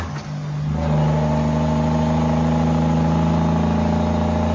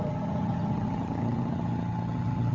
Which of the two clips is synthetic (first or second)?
second